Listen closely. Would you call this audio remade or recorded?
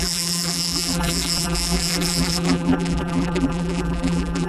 remade